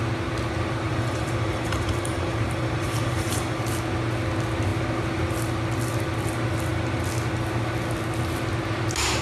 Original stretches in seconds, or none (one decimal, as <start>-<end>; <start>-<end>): 0.0-0.9; 3.6-9.2